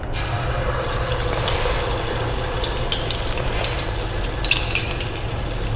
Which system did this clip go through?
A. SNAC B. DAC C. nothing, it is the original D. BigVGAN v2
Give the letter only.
C